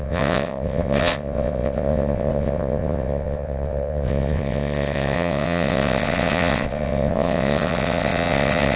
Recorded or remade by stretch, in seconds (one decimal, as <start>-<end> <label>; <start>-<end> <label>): 0.0-8.8 remade